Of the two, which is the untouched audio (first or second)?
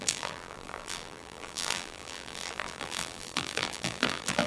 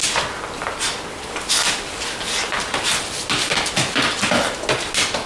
second